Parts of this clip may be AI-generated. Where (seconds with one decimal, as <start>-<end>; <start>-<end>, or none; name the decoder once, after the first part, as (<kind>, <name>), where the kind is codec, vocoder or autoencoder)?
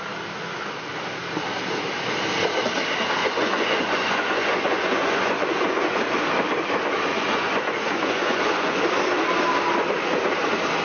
3.2-6.0 (vocoder, Vocos); 7.1-8.8